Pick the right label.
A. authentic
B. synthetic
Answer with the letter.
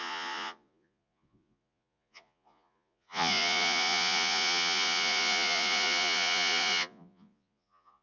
B